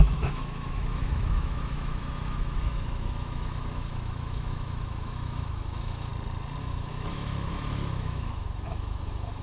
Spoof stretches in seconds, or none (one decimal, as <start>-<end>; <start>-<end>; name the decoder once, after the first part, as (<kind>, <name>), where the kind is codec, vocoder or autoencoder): 0.0-6.1 (autoencoder, DAC-VAE); 6.6-9.4